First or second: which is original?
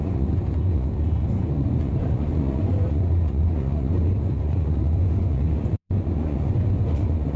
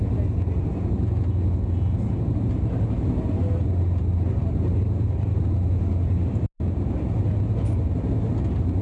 second